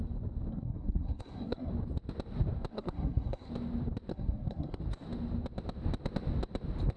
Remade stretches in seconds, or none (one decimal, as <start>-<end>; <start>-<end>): 0.5-1.7; 2.7-3.5; 4.1-4.8